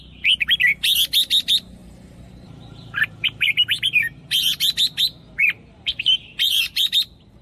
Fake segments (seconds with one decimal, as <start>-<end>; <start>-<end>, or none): 1.8-4.6; 5.4-6.9